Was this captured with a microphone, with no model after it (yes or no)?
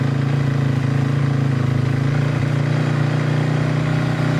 yes